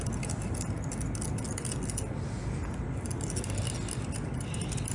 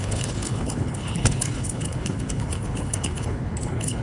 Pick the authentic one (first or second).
first